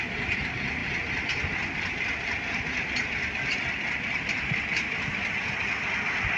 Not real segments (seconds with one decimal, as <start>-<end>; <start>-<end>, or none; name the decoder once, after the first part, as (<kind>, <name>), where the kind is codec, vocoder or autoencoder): none